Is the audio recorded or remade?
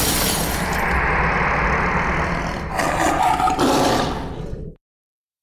remade